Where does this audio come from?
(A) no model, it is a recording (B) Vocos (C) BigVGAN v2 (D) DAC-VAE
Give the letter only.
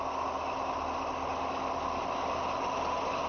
A